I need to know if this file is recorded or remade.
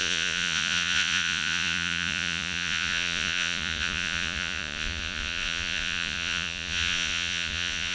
remade